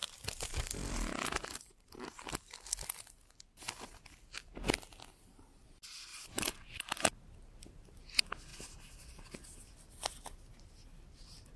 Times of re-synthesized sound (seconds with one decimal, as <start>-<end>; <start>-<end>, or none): 0.0-2.3; 6.1-7.1